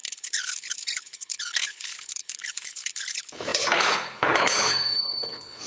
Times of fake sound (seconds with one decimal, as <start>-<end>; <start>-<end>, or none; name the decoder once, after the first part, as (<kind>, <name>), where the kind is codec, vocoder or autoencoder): 0.0-5.7 (codec, HILCodec)